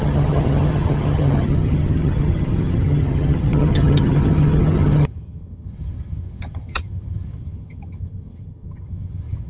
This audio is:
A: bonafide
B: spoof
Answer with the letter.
B